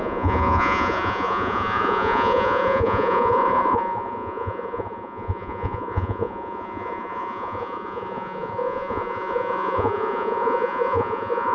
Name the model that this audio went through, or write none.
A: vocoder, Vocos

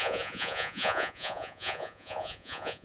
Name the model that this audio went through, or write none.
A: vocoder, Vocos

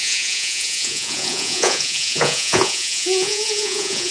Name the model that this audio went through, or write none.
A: vocoder, Vocos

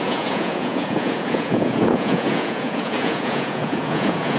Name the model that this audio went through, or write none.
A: vocoder, Vocos